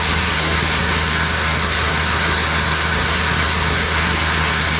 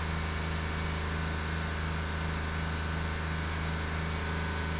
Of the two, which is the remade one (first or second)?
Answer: first